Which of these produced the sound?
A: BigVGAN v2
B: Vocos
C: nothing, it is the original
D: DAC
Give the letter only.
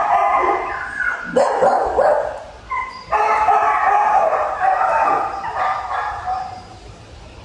A